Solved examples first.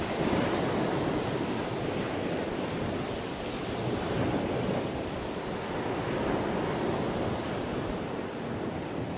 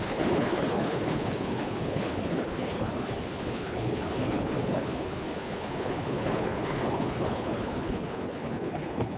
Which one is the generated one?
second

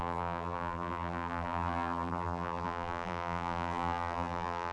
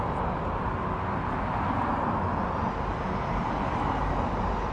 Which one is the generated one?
first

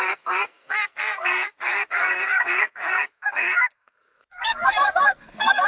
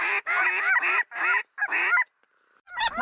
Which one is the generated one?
first